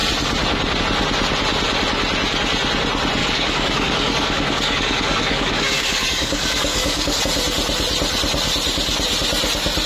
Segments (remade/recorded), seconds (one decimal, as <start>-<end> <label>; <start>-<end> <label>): 0.0-3.2 recorded; 3.2-7.2 remade; 7.2-9.9 recorded